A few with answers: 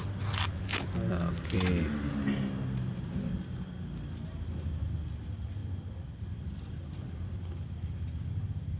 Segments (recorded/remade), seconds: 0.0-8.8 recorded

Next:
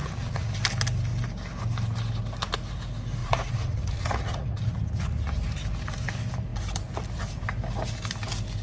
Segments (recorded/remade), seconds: 0.0-0.5 remade; 0.5-3.2 recorded; 3.2-4.6 remade; 4.6-8.6 recorded

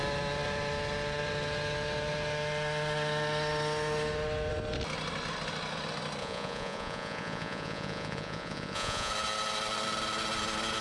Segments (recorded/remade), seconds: 0.0-6.2 recorded; 6.2-9.1 remade; 9.1-10.8 recorded

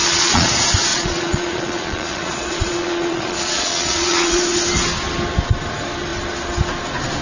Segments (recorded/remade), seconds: 0.0-0.5 remade; 0.5-0.9 recorded; 0.9-4.4 remade; 4.4-7.2 recorded

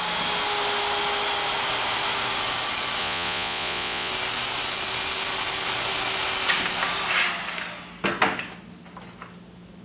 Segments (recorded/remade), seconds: 0.0-3.0 recorded; 3.0-4.1 remade; 4.1-9.8 recorded

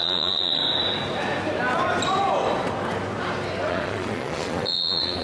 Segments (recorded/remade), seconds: 0.0-0.6 remade; 0.6-3.7 recorded; 3.7-5.2 remade

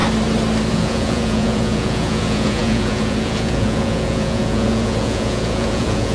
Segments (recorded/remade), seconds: 0.0-0.7 recorded; 0.7-6.1 remade

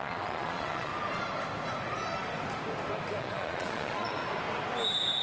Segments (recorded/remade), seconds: 0.0-0.9 remade; 0.9-3.2 recorded; 3.2-4.2 remade; 4.2-5.2 recorded